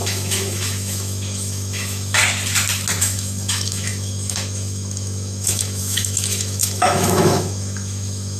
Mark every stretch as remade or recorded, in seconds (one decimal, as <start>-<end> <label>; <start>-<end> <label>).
0.0-2.2 remade; 2.2-3.0 recorded; 3.0-8.4 remade